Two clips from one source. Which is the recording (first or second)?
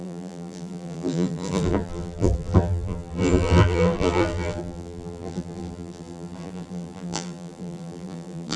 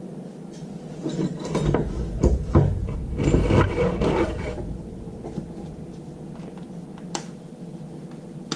second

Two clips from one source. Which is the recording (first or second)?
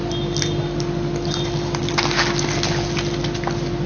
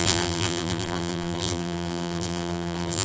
first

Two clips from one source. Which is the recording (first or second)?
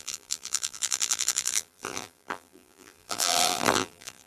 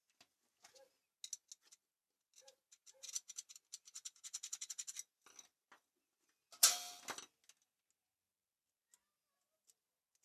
second